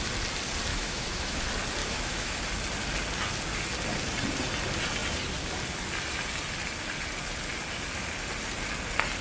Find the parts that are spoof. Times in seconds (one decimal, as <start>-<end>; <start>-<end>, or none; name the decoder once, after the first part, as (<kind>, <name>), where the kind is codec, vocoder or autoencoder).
0.7-1.4 (autoencoder, DAC-VAE); 1.8-2.4